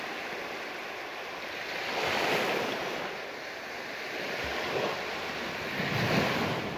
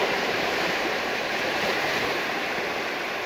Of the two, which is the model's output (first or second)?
second